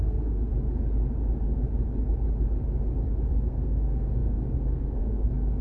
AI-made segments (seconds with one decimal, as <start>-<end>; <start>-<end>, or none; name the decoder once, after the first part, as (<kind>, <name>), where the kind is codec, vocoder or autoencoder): 0.0-0.5 (codec, SNAC); 3.3-5.6